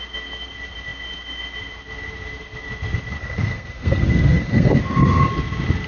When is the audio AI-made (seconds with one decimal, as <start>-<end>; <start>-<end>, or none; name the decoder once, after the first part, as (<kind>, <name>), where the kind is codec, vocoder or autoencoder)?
3.2-5.3 (codec, SNAC)